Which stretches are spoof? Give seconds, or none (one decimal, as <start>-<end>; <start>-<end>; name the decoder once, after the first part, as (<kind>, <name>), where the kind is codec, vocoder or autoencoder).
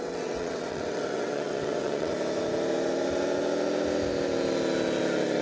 0.0-2.1 (vocoder, WaveNeXt)